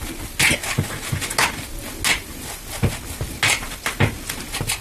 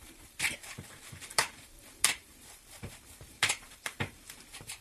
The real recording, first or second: first